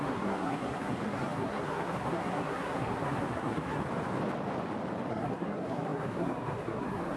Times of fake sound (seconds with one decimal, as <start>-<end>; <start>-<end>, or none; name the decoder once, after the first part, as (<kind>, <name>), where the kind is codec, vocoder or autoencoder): 0.0-3.8 (codec, SNAC); 5.1-7.2